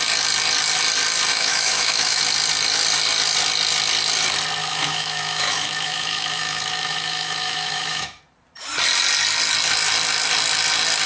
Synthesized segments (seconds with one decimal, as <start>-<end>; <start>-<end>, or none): 1.3-2.2; 4.6-8.2